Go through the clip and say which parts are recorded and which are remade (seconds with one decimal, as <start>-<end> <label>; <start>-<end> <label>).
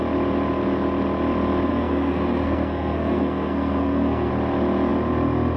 0.0-1.7 recorded; 1.7-4.3 remade; 4.3-5.6 recorded